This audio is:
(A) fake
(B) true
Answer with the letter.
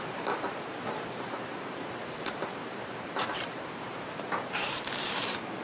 A